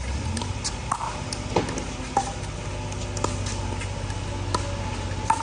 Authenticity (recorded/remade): recorded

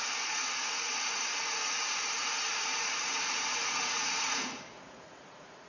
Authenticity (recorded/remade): remade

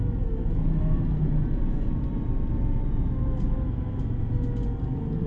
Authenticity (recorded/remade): recorded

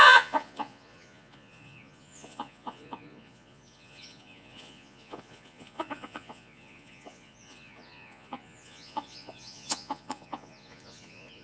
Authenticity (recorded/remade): remade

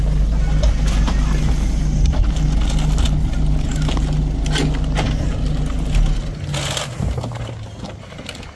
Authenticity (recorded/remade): recorded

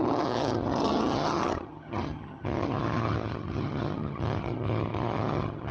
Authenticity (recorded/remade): remade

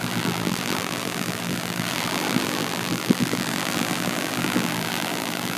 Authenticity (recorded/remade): remade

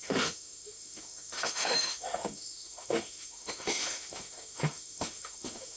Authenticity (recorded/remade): remade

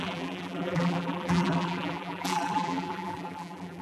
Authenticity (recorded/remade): remade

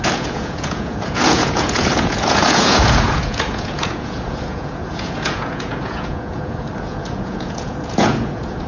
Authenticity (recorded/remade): remade